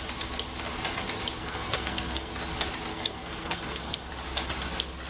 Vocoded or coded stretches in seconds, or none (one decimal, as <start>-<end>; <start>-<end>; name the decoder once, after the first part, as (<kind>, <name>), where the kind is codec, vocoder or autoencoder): 1.4-2.3 (codec, SNAC); 2.9-4.1